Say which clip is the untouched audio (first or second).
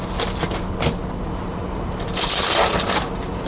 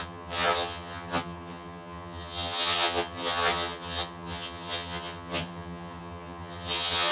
first